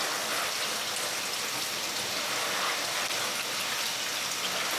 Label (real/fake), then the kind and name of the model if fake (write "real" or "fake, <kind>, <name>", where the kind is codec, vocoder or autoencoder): real